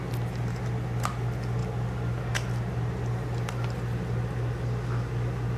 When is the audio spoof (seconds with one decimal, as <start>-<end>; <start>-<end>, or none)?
none